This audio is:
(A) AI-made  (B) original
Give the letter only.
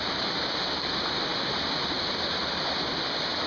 B